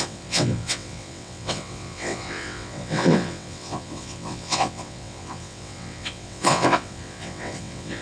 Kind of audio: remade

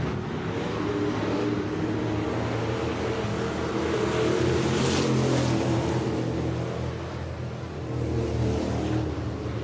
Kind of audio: recorded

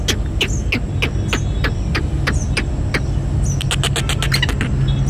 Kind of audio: recorded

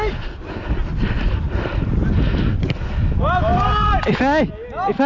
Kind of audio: recorded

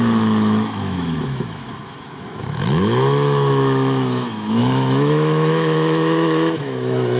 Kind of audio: remade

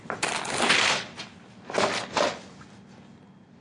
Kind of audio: recorded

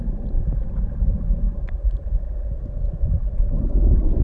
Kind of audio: recorded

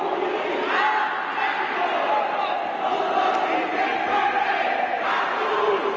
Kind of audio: recorded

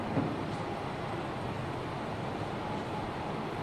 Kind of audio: recorded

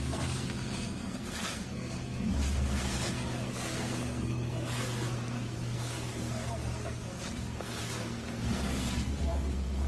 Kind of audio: remade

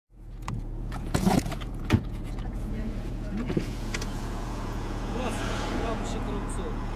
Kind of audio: remade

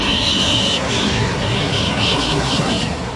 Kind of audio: remade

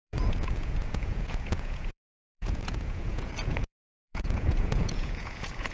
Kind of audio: remade